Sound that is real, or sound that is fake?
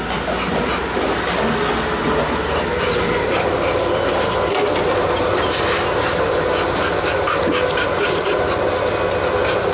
real